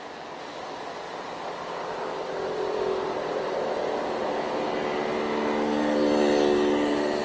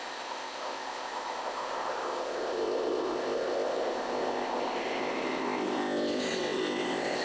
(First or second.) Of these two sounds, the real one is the first